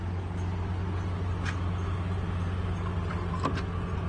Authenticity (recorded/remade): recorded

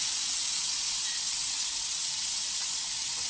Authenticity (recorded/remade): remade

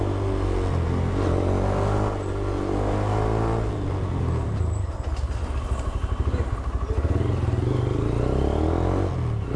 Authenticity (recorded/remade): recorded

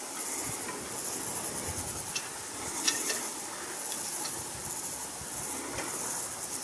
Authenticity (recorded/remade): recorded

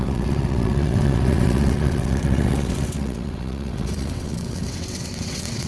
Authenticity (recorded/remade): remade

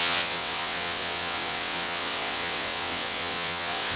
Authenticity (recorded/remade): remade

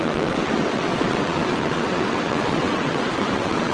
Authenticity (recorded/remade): remade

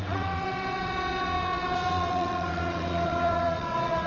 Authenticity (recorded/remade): remade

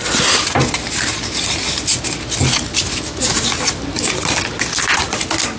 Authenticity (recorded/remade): recorded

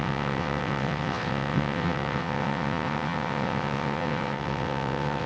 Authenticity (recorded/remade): remade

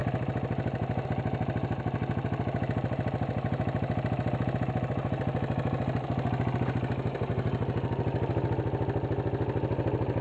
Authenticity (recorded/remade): recorded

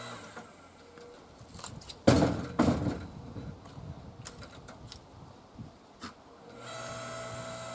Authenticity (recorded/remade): recorded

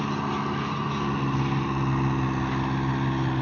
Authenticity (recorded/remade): recorded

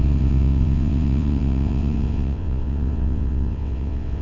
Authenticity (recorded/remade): remade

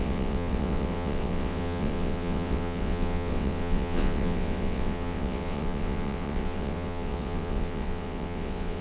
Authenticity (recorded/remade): remade